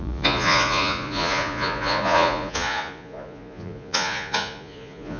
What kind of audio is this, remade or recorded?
remade